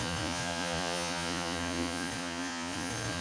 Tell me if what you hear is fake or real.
fake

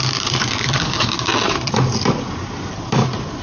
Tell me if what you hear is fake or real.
real